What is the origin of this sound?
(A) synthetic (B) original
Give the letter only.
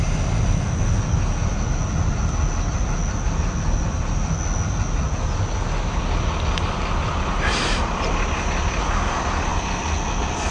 B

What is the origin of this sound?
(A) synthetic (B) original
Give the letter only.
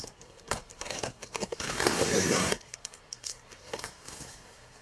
A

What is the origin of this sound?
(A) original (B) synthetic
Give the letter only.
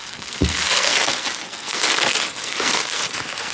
B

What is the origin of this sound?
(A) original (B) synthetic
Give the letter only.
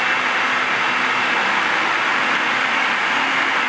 A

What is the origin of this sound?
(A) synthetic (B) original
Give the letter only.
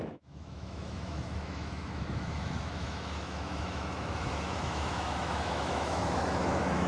A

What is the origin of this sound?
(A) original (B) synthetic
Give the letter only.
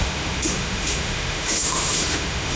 B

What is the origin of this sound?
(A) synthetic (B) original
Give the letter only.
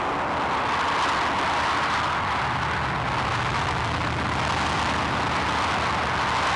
B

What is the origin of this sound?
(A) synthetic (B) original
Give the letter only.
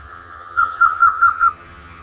A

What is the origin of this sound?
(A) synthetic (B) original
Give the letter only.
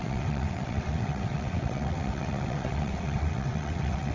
A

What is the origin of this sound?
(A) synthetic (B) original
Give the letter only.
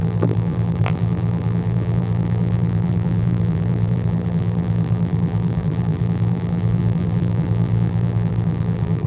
A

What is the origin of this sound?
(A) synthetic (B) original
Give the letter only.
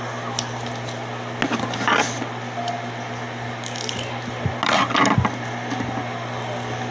B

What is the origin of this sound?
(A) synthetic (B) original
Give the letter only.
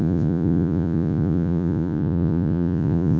A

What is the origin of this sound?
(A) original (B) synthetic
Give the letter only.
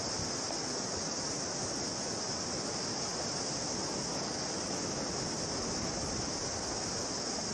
A